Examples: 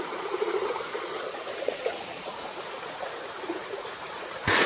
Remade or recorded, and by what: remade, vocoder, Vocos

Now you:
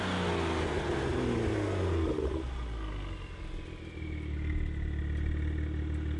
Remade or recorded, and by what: recorded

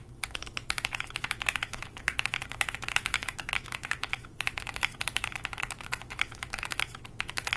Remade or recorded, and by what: remade, autoencoder, DAC-VAE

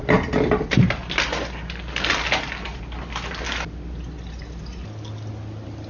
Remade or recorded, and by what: recorded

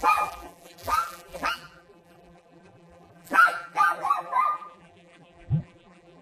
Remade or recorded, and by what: remade, vocoder, BigVGAN v2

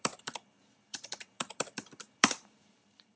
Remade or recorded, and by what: remade, vocoder, BigVGAN v2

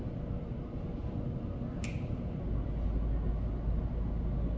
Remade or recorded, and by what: recorded